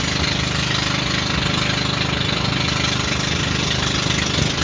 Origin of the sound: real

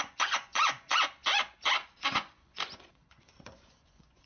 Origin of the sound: fake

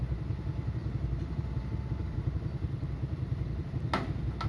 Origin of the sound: real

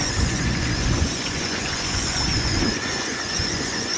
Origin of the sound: fake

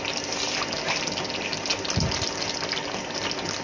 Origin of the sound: real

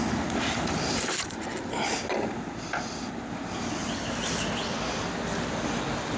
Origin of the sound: real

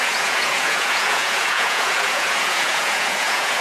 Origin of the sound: fake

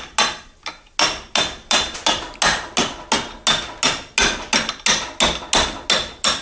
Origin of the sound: real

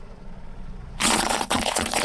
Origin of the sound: fake